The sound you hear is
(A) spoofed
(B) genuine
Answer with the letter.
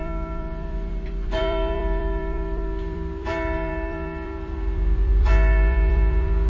A